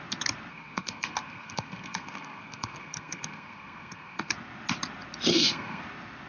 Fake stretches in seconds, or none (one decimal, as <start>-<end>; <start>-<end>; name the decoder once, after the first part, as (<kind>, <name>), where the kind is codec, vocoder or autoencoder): 0.5-4.3 (codec, SNAC); 5.3-5.8